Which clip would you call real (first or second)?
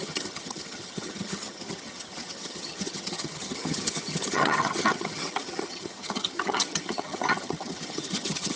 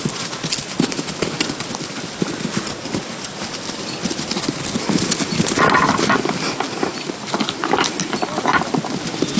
second